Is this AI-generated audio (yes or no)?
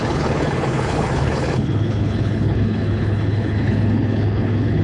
yes